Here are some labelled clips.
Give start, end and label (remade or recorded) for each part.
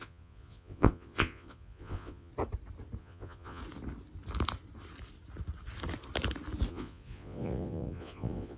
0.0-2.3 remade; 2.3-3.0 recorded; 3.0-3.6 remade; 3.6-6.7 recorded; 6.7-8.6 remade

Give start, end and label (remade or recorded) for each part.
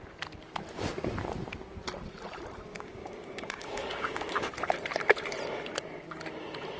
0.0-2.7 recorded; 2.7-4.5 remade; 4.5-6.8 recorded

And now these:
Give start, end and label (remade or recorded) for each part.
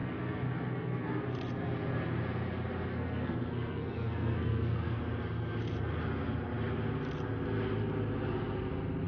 0.0-1.2 remade; 1.2-2.9 recorded; 2.9-5.0 remade; 5.0-9.1 recorded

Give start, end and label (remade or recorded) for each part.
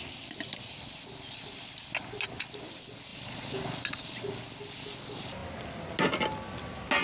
0.0-7.0 recorded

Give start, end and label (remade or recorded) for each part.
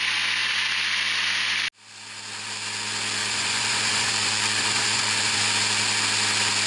0.0-3.2 recorded; 3.2-5.4 remade; 5.4-6.7 recorded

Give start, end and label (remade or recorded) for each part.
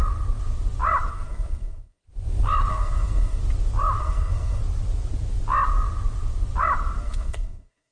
0.0-1.1 recorded; 1.1-2.0 remade; 2.0-2.7 recorded; 2.7-3.4 remade; 3.4-4.0 recorded; 4.0-4.6 remade; 4.6-7.0 recorded; 7.0-7.9 remade